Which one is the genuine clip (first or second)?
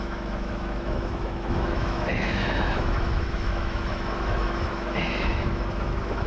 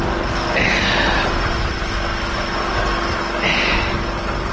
second